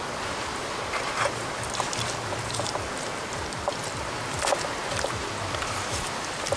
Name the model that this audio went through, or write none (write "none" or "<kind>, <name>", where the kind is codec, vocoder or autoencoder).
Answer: none